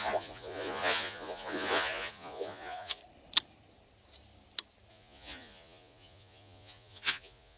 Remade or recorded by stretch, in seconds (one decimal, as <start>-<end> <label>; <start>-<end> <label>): 0.0-3.0 remade; 3.0-4.9 recorded; 4.9-7.6 remade